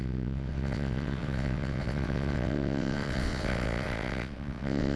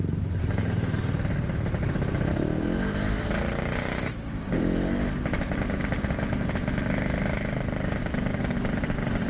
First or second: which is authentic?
second